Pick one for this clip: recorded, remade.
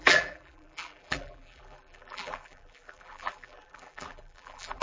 remade